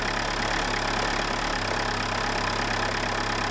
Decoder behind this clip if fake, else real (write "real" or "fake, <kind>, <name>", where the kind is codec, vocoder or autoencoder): real